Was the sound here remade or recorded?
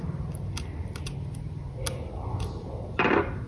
recorded